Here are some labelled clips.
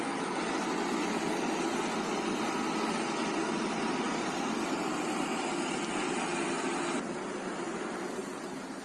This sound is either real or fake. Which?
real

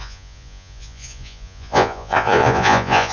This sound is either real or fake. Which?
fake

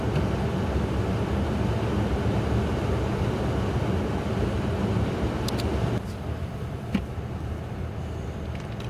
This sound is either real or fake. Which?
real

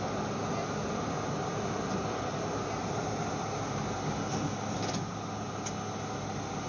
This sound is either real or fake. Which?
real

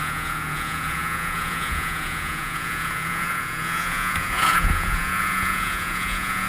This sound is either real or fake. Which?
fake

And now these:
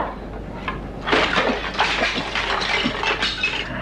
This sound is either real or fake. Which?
real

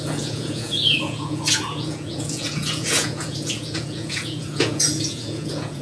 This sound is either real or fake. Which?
fake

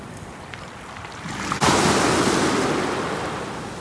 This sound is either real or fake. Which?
real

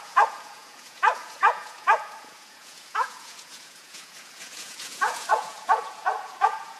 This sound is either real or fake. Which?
fake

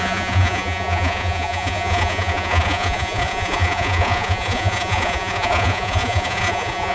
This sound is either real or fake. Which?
fake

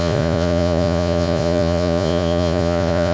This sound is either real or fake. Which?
fake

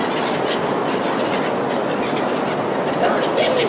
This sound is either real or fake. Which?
real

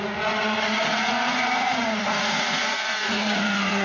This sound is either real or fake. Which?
fake